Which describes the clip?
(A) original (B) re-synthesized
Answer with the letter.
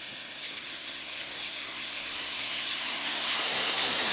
B